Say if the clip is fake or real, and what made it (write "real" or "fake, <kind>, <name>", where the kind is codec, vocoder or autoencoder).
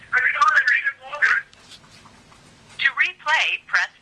real